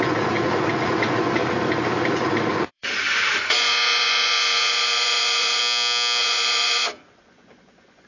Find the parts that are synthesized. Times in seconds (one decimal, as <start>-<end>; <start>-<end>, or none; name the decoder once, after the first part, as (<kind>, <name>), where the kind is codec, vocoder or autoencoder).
0.0-1.4 (vocoder, Vocos); 2.1-5.6; 6.2-8.1

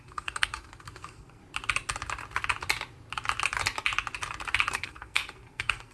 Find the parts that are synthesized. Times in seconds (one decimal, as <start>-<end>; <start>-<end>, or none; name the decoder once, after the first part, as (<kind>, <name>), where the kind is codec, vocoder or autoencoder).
0.0-1.4 (codec, SNAC); 4.7-5.9